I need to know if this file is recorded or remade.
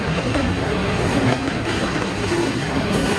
remade